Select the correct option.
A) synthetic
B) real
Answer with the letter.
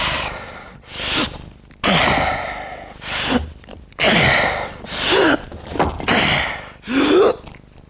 B